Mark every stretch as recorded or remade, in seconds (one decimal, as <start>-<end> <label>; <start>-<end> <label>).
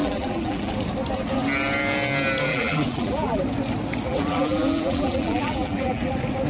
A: 0.0-0.7 remade; 0.7-2.5 recorded; 2.5-3.4 remade; 3.4-4.1 recorded; 4.1-6.1 remade; 6.1-6.5 recorded